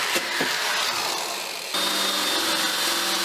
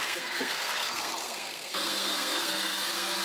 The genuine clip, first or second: first